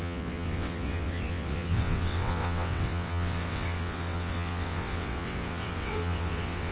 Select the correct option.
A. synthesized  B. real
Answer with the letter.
A